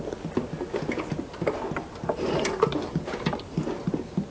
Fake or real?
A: real